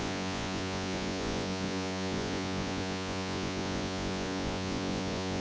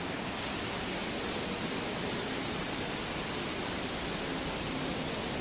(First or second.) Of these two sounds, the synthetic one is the first